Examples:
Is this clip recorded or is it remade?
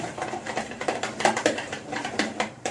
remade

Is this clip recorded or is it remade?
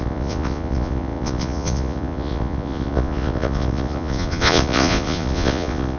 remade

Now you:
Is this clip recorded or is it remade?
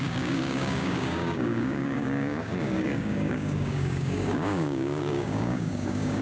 remade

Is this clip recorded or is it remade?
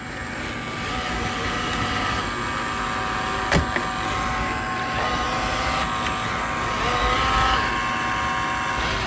recorded